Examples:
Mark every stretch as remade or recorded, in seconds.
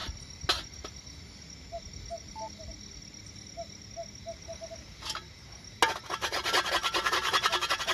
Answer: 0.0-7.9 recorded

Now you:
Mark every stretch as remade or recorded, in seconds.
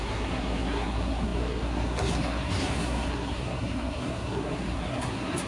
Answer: 0.0-5.5 remade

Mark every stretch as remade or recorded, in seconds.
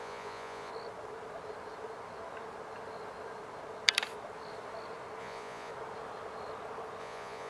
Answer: 0.0-0.7 remade; 0.7-5.2 recorded; 5.2-5.7 remade; 5.7-7.0 recorded; 7.0-7.5 remade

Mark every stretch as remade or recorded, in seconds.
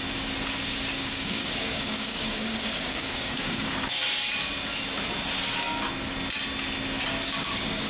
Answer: 0.0-0.9 recorded; 0.9-4.0 remade; 4.0-7.4 recorded; 7.4-7.9 remade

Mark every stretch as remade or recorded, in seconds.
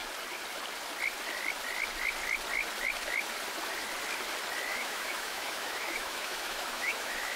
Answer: 0.0-4.7 recorded; 4.7-7.4 remade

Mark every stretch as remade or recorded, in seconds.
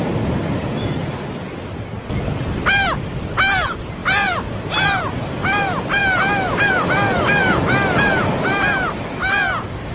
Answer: 0.0-6.0 remade; 6.0-6.7 recorded; 6.7-9.9 remade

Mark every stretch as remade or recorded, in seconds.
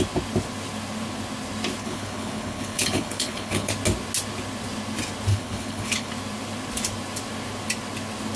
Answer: 0.0-1.8 recorded; 1.8-3.7 remade; 3.7-5.3 recorded; 5.3-6.1 remade; 6.1-8.4 recorded